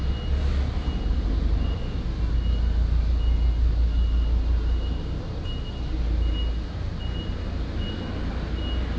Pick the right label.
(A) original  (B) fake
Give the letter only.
A